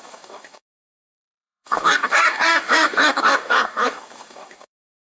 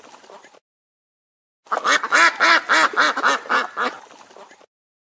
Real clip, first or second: second